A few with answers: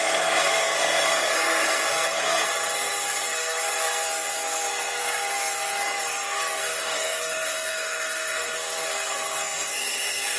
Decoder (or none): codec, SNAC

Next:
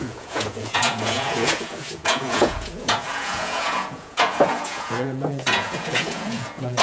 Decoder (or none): vocoder, Vocos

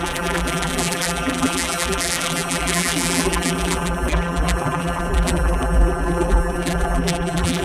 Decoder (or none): vocoder, BigVGAN v2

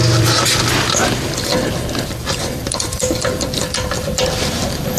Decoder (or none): vocoder, BigVGAN v2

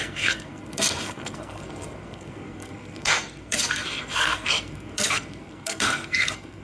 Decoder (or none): codec, SNAC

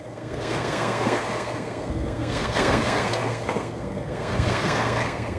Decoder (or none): codec, SNAC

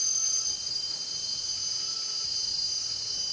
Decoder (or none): none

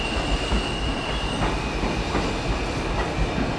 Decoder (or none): none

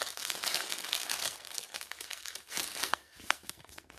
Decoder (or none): codec, SNAC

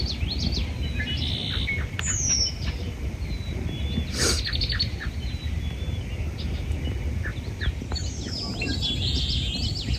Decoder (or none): none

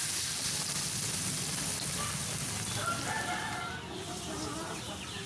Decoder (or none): none